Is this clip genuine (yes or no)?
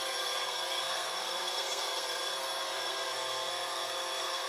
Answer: no